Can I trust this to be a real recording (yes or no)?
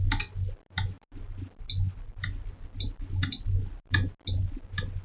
yes